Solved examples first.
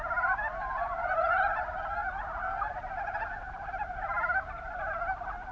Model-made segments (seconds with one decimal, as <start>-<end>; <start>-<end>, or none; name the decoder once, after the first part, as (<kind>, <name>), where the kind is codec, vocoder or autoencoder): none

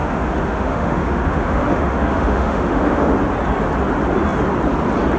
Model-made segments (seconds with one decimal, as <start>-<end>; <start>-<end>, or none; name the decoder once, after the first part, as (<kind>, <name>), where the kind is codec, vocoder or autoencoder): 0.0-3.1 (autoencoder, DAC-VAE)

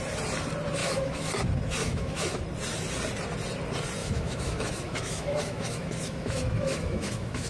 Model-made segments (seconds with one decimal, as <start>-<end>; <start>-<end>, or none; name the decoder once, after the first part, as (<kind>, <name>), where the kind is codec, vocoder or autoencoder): 0.8-1.3 (autoencoder, DAC-VAE); 1.8-2.4; 4.0-7.5

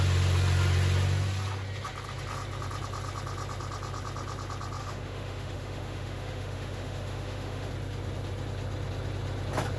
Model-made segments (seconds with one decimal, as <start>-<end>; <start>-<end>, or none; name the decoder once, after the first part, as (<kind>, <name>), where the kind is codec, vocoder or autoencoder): 4.8-7.7 (autoencoder, DAC-VAE)

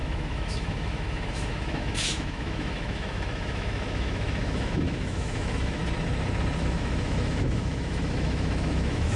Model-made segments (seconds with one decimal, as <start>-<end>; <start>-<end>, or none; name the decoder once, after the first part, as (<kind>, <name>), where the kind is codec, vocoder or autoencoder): 0.0-5.8 (autoencoder, DAC-VAE); 6.6-9.2

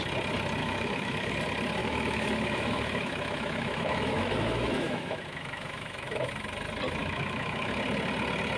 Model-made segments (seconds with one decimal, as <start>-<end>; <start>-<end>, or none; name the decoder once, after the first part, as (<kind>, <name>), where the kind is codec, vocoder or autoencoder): 0.6-1.3 (autoencoder, DAC-VAE); 1.8-6.3; 7.0-7.7

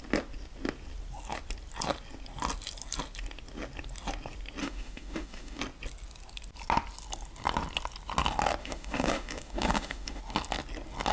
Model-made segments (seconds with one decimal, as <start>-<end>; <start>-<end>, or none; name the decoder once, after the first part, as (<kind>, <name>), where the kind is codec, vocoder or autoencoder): 4.6-5.6 (autoencoder, DAC-VAE); 8.6-10.2

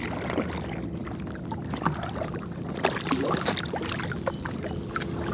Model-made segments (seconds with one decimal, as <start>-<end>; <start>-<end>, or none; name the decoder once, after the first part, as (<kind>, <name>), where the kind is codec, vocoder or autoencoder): none